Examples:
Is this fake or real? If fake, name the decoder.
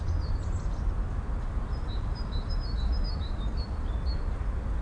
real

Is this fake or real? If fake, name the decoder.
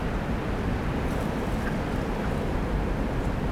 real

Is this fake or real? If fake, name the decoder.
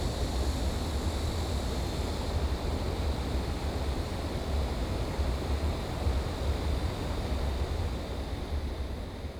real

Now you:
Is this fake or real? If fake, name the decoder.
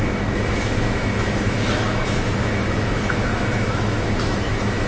fake, autoencoder, DAC-VAE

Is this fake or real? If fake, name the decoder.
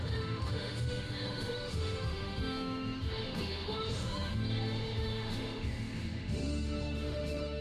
fake, autoencoder, DAC-VAE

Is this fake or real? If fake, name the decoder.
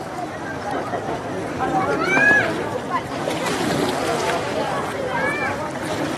fake, vocoder, BigVGAN v2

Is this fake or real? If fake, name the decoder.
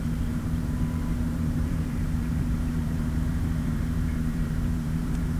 fake, vocoder, BigVGAN v2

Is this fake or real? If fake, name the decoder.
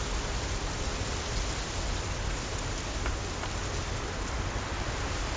real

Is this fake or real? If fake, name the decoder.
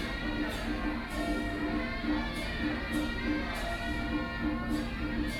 real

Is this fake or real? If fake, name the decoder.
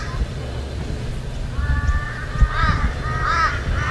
real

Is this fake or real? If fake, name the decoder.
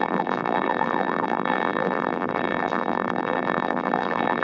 fake, vocoder, BigVGAN v2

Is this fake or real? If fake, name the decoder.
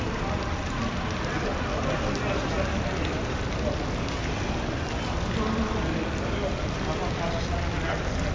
real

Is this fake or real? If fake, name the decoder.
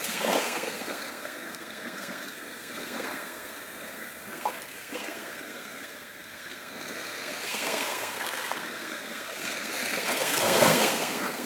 fake, codec, SNAC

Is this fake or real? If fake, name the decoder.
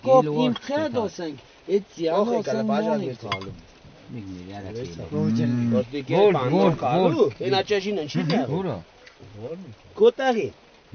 real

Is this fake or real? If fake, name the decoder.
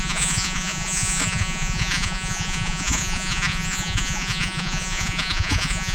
fake, vocoder, Vocos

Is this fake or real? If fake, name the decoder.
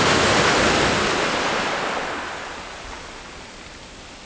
real